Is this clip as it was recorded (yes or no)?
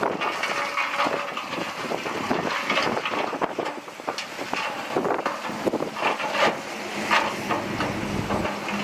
yes